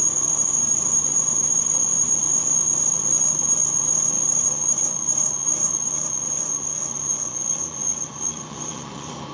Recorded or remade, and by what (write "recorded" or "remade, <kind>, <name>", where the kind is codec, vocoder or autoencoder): remade, vocoder, Vocos